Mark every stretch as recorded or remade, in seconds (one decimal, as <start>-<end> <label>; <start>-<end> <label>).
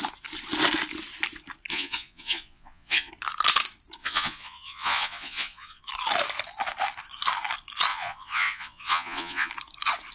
0.0-1.7 recorded; 1.7-3.1 remade; 3.1-4.0 recorded; 4.0-5.8 remade; 5.8-7.9 recorded; 7.9-9.5 remade; 9.5-10.1 recorded